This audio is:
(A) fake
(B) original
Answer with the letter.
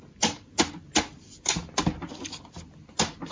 B